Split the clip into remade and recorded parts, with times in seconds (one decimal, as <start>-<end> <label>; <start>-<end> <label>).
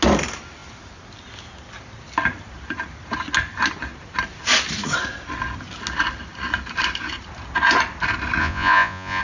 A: 0.0-8.4 recorded; 8.4-9.2 remade